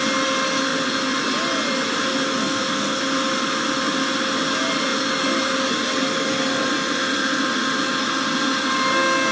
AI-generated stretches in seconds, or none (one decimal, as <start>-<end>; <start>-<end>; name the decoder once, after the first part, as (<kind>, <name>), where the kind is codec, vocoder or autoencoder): 2.4-3.0 (codec, SNAC)